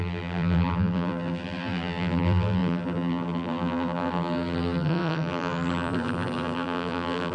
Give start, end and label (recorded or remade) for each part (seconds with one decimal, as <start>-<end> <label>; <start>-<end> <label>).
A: 0.0-7.3 remade